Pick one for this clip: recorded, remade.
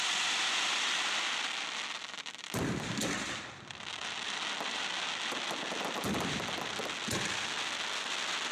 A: recorded